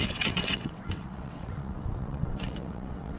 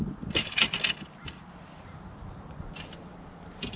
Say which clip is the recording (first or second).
second